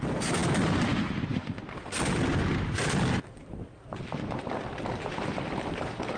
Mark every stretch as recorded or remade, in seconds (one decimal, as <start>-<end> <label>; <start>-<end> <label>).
0.0-0.4 remade; 0.4-0.9 recorded; 0.9-6.2 remade

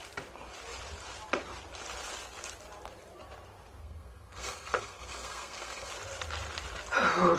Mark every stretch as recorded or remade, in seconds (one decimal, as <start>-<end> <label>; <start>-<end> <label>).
0.0-3.8 recorded; 3.8-5.9 remade; 5.9-7.4 recorded

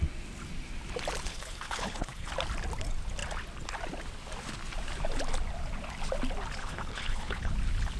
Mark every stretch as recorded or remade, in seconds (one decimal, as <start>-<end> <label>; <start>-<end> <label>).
0.0-1.3 recorded; 1.3-2.3 remade; 2.3-6.6 recorded; 6.6-7.5 remade; 7.5-8.0 recorded

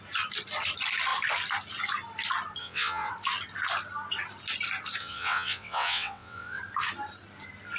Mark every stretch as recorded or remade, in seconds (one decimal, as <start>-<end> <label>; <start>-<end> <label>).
0.0-2.6 recorded; 2.6-3.1 remade; 3.1-5.0 recorded; 5.0-6.6 remade; 6.6-7.8 recorded